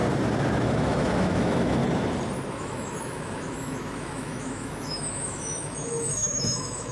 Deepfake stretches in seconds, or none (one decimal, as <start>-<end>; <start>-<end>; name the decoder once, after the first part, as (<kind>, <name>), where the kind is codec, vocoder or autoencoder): 0.6-1.8 (autoencoder, DAC-VAE); 2.5-6.9